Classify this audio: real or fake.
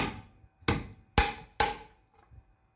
real